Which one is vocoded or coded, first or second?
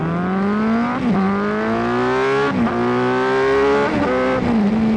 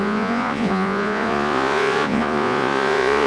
second